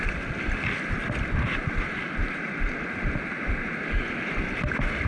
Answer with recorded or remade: recorded